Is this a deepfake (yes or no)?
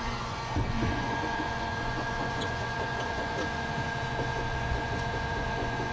yes